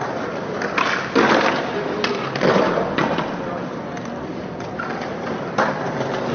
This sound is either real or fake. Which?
real